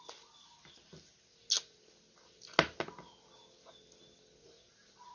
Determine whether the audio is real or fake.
real